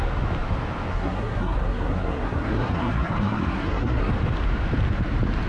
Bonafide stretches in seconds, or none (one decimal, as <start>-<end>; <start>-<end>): 0.0-0.9; 4.1-5.5